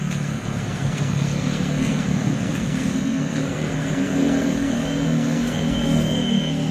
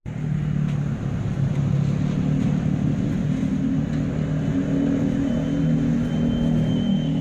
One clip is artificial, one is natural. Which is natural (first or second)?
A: second